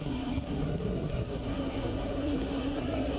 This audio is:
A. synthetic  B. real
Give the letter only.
A